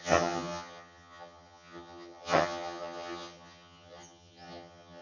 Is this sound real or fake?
fake